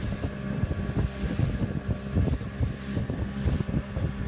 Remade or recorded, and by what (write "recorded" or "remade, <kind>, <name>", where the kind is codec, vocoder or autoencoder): recorded